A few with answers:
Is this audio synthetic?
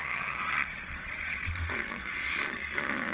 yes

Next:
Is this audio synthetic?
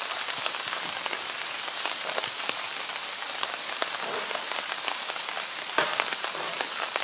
no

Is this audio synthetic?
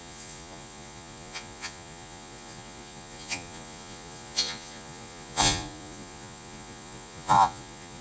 yes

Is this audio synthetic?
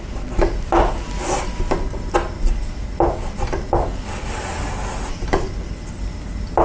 no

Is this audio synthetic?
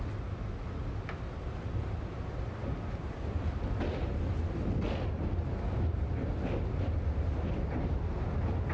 no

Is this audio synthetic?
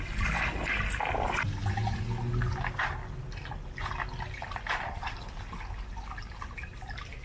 no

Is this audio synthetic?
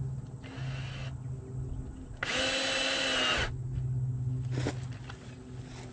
no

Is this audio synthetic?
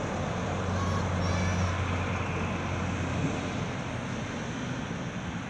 no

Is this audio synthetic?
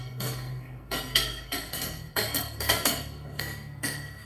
yes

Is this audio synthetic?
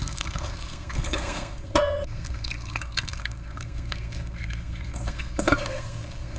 yes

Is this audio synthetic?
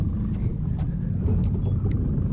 no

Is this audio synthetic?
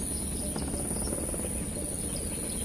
no